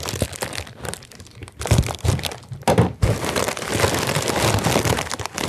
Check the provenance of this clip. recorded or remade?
remade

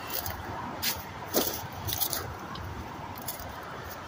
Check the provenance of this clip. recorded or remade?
remade